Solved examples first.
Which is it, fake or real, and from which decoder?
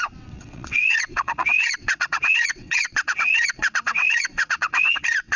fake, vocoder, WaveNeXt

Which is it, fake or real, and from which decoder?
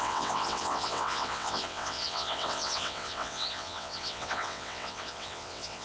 fake, vocoder, WaveNeXt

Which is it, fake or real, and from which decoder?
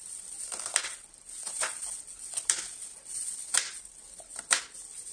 real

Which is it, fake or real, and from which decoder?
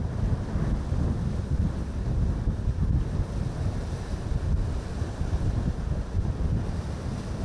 real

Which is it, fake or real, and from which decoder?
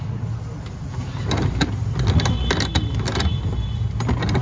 real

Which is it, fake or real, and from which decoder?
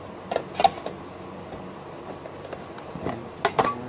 real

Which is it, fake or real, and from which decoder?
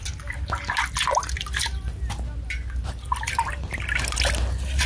real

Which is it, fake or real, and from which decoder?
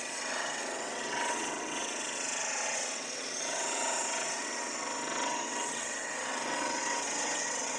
fake, vocoder, WaveNeXt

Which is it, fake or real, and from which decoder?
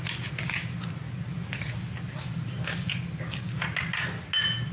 real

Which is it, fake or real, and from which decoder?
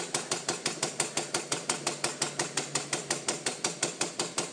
real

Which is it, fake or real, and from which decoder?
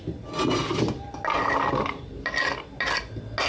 real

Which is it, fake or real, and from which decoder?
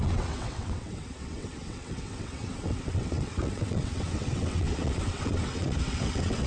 fake, vocoder, WaveNeXt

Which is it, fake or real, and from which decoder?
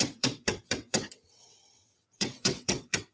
fake, vocoder, WaveNeXt